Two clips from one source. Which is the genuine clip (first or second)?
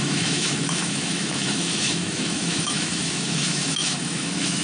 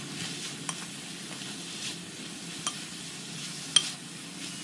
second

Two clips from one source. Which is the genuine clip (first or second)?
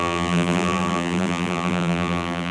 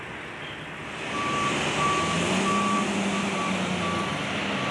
second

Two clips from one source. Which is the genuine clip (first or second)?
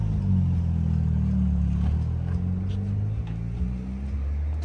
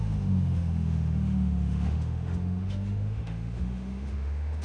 first